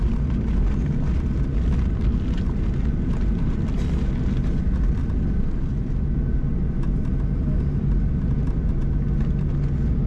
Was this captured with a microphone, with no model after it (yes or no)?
yes